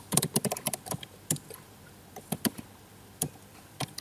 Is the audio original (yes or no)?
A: no